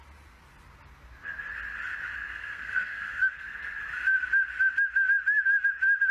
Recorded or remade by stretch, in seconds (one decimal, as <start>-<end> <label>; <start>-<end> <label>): 0.0-2.2 recorded; 2.2-3.8 remade; 3.8-6.1 recorded